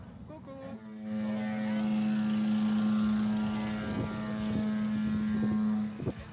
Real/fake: real